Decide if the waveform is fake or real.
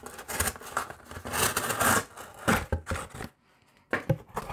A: real